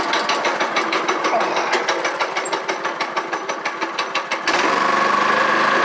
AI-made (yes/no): no